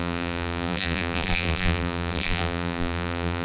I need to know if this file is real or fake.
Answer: fake